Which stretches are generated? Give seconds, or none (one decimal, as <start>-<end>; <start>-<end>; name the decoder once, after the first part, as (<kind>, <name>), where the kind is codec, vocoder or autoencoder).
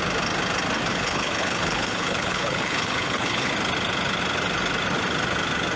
0.9-3.5 (codec, HILCodec)